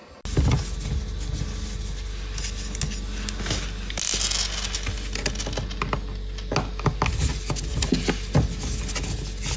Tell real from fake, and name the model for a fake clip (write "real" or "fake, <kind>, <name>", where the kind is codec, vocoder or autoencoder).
real